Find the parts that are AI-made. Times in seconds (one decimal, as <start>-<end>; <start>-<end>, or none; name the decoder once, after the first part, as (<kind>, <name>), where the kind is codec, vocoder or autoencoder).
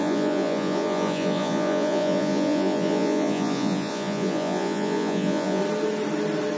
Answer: 0.0-5.6 (vocoder, Vocos)